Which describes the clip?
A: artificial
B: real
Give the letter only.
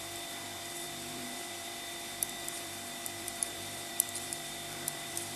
A